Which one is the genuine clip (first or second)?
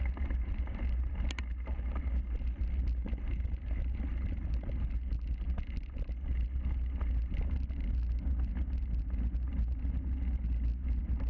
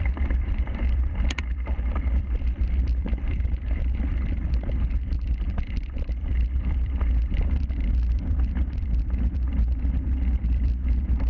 first